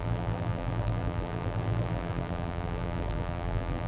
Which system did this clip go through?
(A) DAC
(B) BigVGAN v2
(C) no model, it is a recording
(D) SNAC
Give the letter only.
B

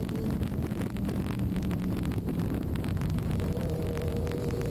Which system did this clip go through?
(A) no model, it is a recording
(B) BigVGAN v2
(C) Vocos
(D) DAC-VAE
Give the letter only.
B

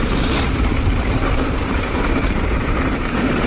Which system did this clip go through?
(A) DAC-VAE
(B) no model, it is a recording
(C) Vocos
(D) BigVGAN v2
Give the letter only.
D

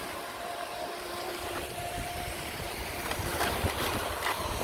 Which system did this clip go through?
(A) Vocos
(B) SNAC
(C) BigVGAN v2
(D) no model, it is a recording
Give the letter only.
C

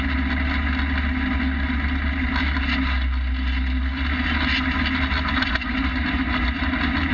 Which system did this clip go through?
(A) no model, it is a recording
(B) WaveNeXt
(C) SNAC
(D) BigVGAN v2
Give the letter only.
A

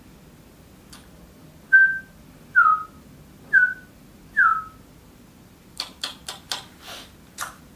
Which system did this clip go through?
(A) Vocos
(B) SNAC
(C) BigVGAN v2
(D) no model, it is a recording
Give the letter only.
D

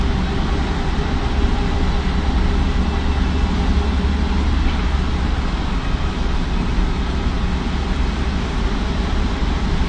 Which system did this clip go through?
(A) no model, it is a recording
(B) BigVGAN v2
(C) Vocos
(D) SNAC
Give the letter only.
A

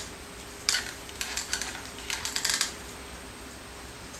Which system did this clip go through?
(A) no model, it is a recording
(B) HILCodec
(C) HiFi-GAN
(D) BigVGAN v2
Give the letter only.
D